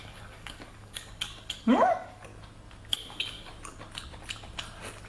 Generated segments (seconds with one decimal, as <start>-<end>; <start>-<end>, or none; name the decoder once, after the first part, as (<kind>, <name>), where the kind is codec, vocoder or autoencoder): 0.0-2.3 (codec, DAC); 2.9-3.5